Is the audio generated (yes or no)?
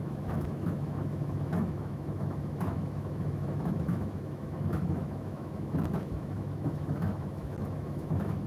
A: yes